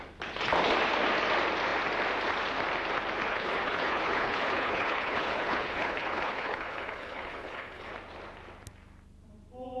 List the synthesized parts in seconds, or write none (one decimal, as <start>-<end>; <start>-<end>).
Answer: 3.3-7.9